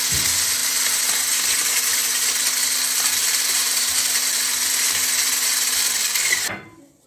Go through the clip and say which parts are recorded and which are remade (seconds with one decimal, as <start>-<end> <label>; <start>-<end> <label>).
0.0-3.2 recorded; 3.2-5.3 remade; 5.3-7.1 recorded